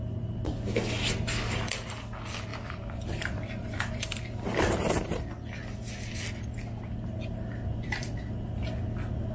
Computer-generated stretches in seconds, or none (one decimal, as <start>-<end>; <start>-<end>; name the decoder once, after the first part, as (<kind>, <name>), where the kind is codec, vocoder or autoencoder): 2.5-4.2 (vocoder, BigVGAN v2); 7.7-8.2